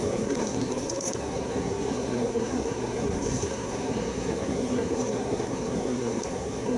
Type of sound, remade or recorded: remade